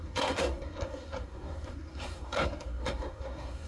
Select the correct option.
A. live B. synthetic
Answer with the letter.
B